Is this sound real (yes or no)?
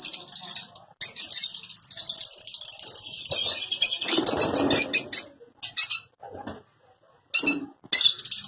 yes